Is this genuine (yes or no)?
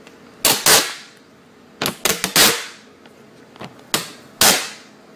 yes